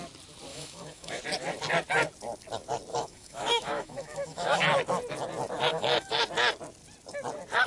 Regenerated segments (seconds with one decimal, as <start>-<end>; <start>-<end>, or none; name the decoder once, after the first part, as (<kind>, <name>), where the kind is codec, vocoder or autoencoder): 0.5-1.2 (autoencoder, DAC-VAE); 2.9-4.6; 5.7-6.2